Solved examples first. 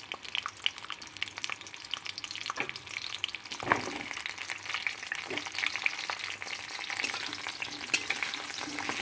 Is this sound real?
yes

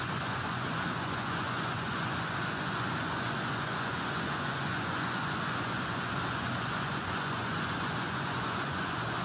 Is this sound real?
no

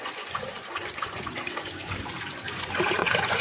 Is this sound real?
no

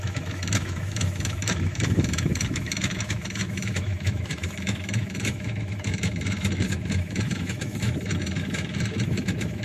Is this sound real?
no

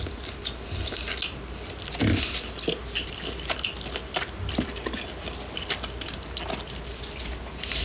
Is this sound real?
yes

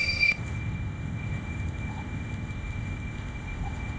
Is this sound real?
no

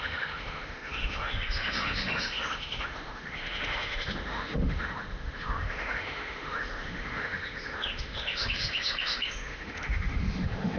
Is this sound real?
no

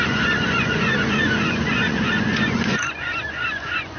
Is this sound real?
no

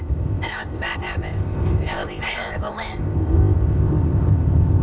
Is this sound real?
no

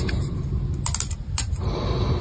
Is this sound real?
yes